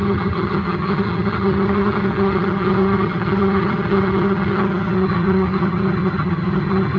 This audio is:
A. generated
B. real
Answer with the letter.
A